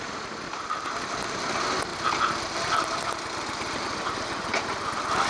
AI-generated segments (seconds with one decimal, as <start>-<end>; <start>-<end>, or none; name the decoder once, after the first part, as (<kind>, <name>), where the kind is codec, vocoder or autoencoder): none